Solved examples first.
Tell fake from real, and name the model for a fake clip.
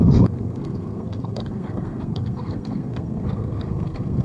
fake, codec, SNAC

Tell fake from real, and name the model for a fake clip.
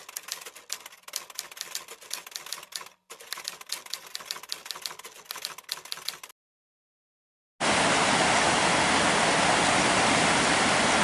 real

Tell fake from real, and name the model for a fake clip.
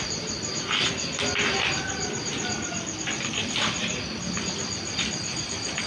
real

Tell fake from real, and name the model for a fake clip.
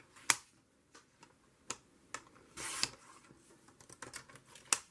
real